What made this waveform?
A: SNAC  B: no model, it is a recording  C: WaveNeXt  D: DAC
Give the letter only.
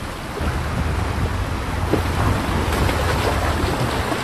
B